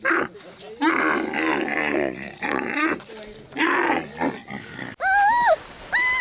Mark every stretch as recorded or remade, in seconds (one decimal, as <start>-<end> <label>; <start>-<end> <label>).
0.0-1.8 recorded; 1.8-3.1 remade; 3.1-6.2 recorded